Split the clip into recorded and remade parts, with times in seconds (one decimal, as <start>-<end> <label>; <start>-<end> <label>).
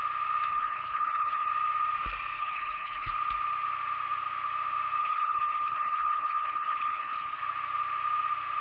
0.0-0.5 recorded; 0.5-1.5 remade; 1.5-2.4 recorded; 2.4-3.1 remade; 3.1-5.0 recorded; 5.0-7.4 remade; 7.4-8.6 recorded